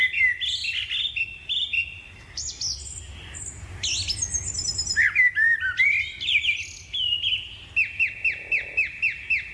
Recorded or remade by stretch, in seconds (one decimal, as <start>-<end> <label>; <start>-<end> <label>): 0.0-9.5 recorded